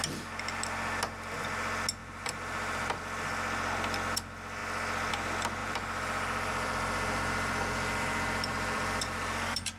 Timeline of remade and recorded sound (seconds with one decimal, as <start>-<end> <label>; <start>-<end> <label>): 0.0-2.0 recorded; 2.0-3.0 remade; 3.0-5.6 recorded; 5.6-9.8 remade